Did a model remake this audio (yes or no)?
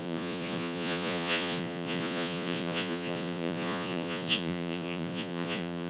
yes